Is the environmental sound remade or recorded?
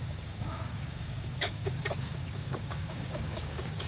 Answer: remade